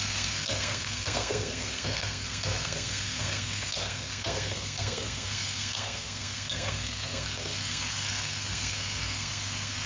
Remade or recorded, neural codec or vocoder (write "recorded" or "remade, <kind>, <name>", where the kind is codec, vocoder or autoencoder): remade, codec, SNAC